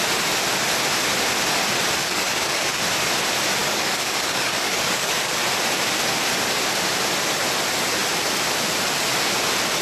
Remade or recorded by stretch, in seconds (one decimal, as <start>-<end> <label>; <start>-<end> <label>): 0.0-2.0 recorded; 2.0-2.8 remade; 2.8-3.6 recorded; 3.6-5.4 remade; 5.4-9.8 recorded